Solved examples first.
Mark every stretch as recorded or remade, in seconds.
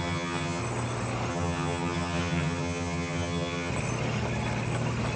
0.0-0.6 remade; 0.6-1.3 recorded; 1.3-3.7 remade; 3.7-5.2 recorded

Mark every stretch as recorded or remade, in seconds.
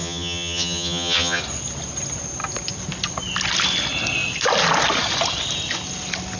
0.0-1.4 remade; 1.4-6.4 recorded